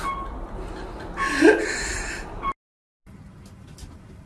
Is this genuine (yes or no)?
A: yes